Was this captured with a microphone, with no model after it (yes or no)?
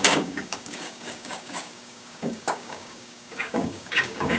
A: no